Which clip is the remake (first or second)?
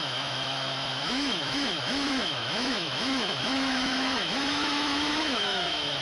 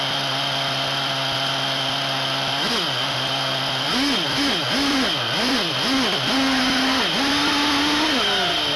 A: first